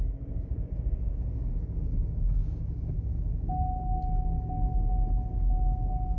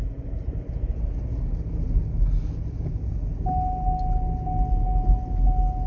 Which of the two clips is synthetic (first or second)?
first